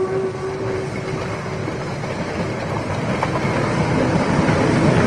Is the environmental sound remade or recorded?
recorded